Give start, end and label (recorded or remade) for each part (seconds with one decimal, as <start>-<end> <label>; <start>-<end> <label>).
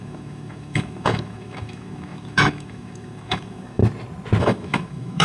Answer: 0.0-3.8 remade; 3.8-4.4 recorded; 4.4-5.2 remade